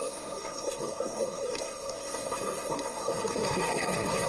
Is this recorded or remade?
remade